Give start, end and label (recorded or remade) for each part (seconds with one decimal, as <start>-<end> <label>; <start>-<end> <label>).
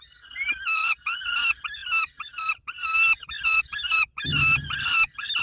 0.0-1.8 recorded; 1.8-3.6 remade; 3.6-4.3 recorded; 4.3-5.4 remade